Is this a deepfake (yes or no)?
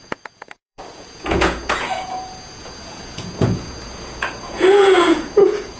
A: yes